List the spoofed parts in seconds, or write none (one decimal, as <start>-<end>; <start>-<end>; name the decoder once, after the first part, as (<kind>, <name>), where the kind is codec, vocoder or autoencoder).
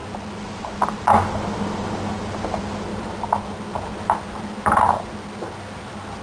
2.9-6.2 (vocoder, BigVGAN v2)